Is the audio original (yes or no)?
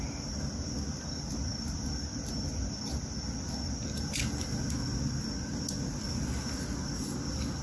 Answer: yes